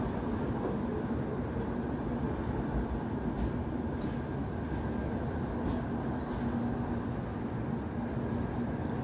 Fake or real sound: real